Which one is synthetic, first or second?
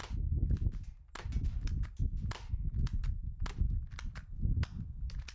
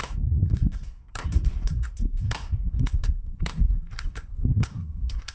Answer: second